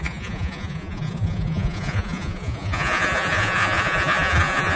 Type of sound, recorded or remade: remade